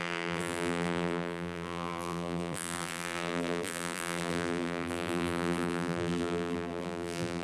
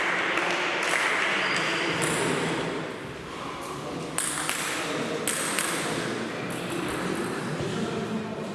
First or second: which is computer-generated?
first